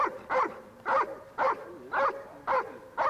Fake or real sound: real